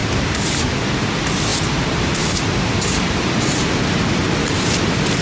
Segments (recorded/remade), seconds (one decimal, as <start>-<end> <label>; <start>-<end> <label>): 0.0-0.7 remade; 0.7-1.5 recorded; 1.5-4.0 remade; 4.0-5.2 recorded